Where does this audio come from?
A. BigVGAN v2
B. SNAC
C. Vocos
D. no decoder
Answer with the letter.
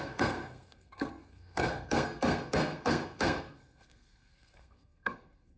B